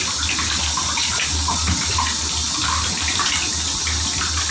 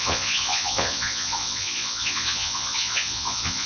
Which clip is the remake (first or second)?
second